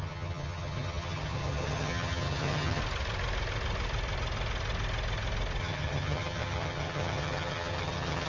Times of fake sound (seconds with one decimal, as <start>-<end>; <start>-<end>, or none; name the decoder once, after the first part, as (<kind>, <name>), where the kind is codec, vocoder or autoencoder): 0.0-2.8 (vocoder, HiFi-GAN); 5.6-8.3